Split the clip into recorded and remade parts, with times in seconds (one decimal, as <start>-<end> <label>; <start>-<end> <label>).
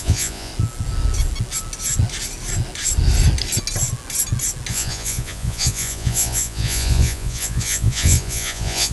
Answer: 0.0-0.5 remade; 0.5-4.7 recorded; 4.7-8.9 remade